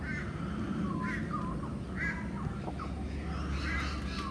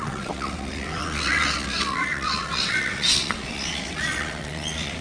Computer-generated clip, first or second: second